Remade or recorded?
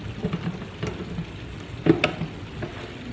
recorded